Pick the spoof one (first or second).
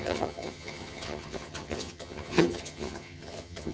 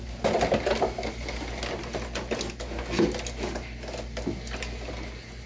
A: first